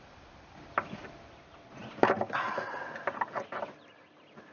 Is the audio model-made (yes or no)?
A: no